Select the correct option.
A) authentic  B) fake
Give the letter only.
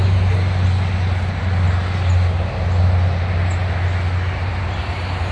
A